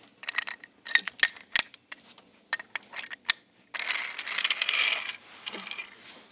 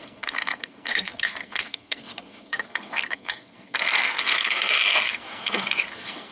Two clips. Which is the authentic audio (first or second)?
first